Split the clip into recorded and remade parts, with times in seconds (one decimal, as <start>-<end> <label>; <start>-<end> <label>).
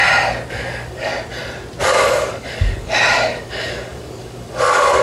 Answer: 0.0-0.5 recorded; 0.5-1.1 remade; 1.1-1.8 recorded; 1.8-5.0 remade